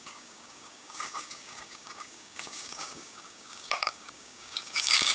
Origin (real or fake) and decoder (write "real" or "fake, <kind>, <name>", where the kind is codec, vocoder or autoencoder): fake, codec, DAC